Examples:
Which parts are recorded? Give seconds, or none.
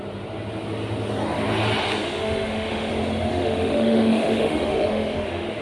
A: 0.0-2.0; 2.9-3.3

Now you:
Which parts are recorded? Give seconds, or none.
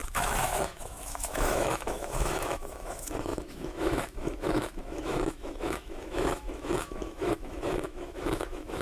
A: none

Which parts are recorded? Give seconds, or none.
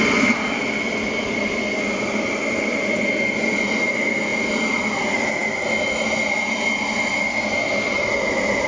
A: 0.0-8.7